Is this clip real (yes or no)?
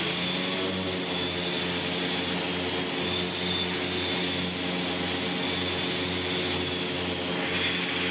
yes